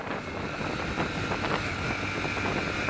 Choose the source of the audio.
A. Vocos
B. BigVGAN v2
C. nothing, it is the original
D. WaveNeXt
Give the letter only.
C